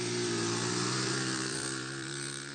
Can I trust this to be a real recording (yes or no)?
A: no